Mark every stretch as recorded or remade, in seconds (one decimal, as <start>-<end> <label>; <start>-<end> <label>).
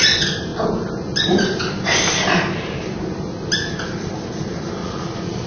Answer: 0.0-4.8 recorded; 4.8-5.5 remade